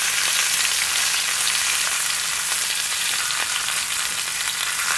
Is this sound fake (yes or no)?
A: no